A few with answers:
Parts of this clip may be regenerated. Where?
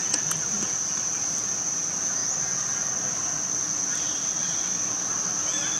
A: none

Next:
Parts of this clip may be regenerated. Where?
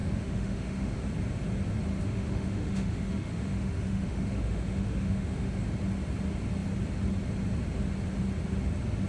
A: 0.0-1.0 (autoencoder, DAC-VAE); 1.9-5.6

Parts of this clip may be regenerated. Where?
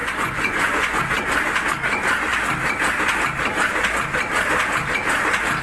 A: 0.0-1.0 (vocoder, Vocos)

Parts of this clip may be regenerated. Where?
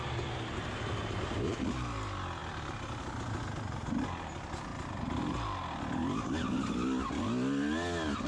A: none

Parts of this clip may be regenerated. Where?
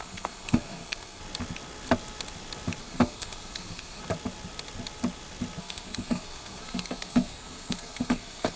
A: 0.0-1.2 (codec, SNAC); 2.8-4.0; 5.6-8.6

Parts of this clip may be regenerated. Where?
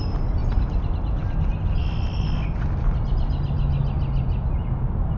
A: none